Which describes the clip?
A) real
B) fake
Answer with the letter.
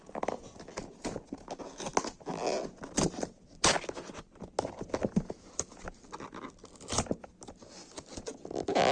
A